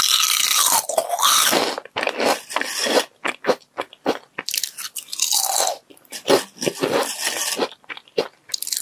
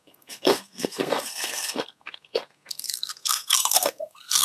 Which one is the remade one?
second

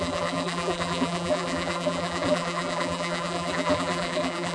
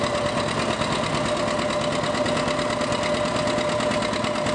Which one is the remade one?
first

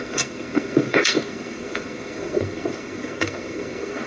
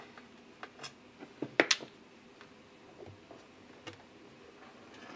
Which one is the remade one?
first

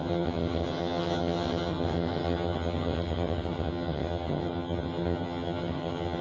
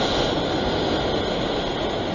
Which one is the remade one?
first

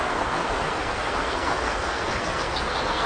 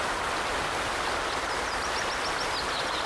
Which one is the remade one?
first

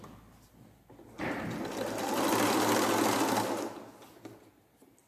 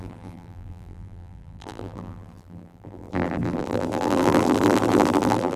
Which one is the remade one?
second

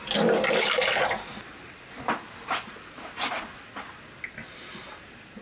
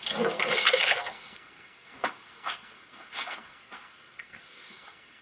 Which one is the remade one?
second